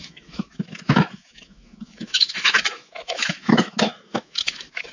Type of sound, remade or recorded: remade